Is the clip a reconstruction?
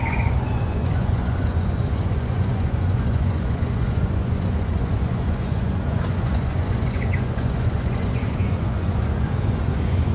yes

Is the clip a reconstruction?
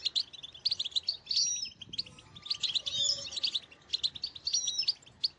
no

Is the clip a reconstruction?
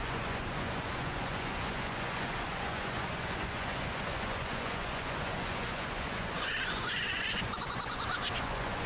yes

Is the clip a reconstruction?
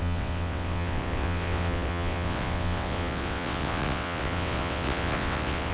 yes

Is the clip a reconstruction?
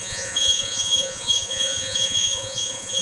yes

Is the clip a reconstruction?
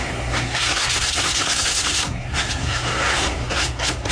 yes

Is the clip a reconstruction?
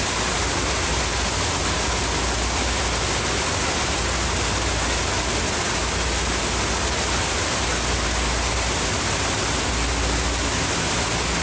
no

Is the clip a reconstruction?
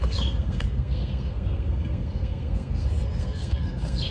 yes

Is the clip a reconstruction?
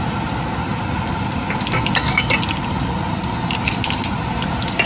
no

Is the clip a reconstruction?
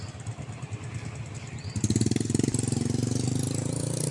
no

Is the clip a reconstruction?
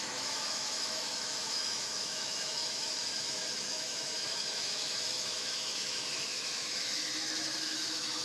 yes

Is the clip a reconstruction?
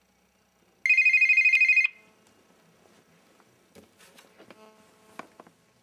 no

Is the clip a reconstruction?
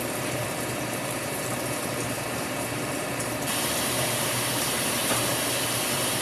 yes